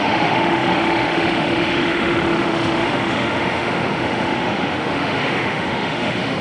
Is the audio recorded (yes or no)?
no